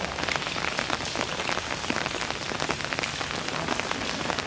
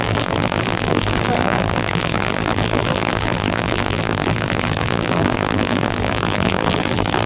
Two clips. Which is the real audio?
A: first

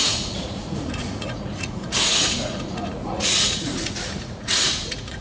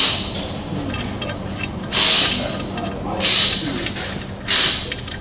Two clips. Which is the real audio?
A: second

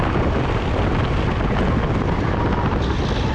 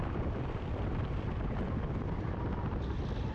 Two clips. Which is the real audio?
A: first